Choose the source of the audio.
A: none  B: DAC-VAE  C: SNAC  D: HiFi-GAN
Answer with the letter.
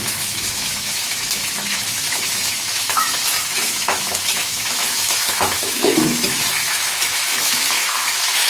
B